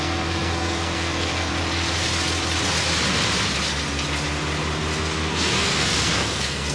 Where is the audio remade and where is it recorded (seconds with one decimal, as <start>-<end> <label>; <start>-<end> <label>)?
0.0-1.5 remade; 1.5-5.0 recorded; 5.0-6.7 remade